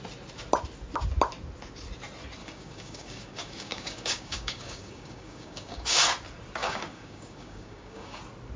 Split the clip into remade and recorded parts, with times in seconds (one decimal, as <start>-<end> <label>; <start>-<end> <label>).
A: 0.0-2.4 recorded; 2.4-6.0 remade; 6.0-6.6 recorded; 6.6-8.2 remade; 8.2-8.6 recorded